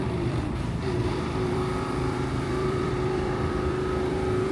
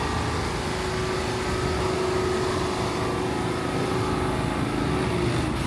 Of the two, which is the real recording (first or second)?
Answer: second